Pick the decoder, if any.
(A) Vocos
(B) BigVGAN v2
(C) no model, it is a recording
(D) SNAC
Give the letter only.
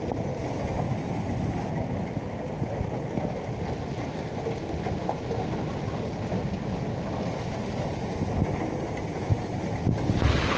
C